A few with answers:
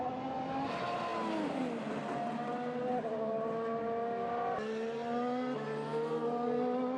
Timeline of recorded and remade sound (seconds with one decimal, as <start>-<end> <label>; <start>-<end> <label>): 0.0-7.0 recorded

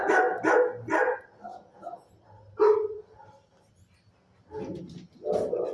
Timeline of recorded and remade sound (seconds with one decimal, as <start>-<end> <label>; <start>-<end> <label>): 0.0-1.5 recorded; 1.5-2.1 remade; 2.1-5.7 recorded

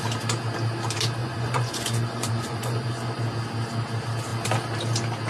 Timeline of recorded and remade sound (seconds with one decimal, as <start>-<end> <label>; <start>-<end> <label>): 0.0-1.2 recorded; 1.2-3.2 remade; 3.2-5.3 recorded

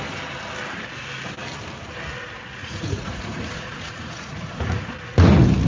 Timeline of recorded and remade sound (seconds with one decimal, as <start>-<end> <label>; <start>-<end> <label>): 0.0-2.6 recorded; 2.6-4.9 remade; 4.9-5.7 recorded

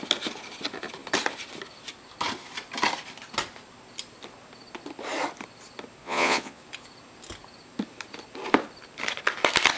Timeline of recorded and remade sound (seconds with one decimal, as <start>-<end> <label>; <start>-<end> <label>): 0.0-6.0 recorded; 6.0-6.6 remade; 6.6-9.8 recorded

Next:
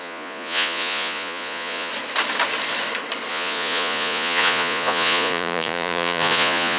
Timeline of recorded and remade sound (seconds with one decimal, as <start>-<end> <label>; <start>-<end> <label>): 0.0-1.9 remade; 1.9-3.3 recorded; 3.3-6.8 remade